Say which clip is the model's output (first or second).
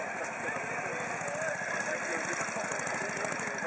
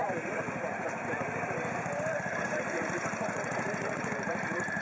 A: second